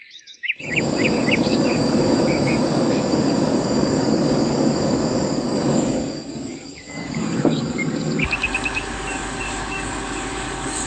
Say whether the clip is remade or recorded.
remade